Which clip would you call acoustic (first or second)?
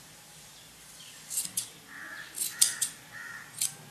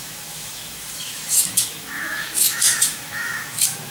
first